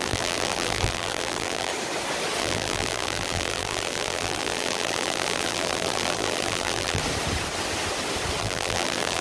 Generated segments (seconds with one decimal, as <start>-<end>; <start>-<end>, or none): 0.0-1.7; 2.4-7.0; 8.4-9.2